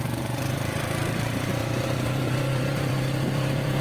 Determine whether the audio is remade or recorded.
remade